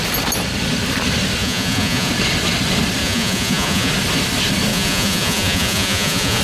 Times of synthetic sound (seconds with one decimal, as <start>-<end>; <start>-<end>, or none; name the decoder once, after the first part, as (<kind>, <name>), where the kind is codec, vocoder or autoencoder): 1.4-2.1 (vocoder, Vocos); 3.0-3.9; 4.7-6.4